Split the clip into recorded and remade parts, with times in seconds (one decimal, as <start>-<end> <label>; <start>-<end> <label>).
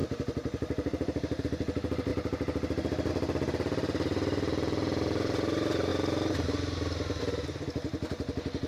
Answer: 0.0-1.4 remade; 1.4-8.7 recorded